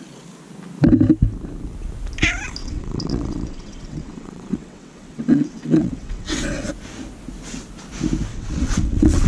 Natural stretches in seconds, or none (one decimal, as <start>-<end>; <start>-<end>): 0.0-2.6; 6.7-8.3